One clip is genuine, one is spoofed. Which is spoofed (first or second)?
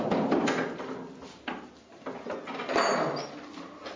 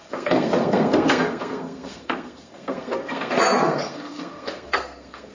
second